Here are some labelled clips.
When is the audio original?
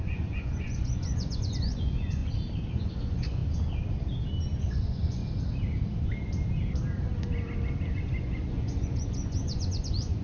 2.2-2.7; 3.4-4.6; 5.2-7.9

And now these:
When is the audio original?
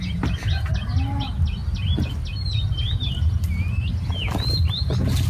0.0-5.3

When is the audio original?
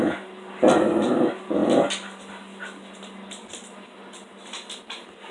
0.0-5.3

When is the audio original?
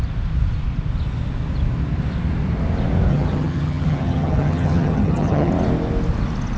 0.0-3.1; 5.5-6.6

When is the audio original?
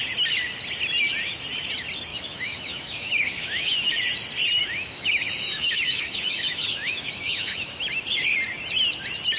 0.0-2.1; 4.0-4.6; 7.9-9.4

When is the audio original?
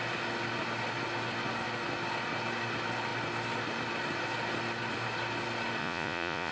0.0-5.8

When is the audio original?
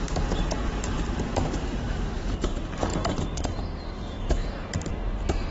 none